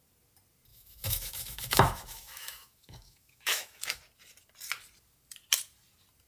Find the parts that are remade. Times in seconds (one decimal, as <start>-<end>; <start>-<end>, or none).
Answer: 0.7-4.0